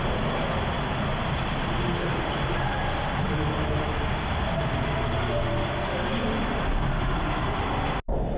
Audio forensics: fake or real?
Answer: real